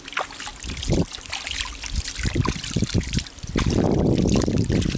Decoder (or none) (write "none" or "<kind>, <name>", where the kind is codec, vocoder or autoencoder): none